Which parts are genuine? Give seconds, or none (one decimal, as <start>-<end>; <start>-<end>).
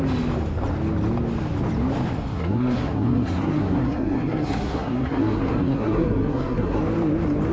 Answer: 0.0-2.3; 6.8-7.5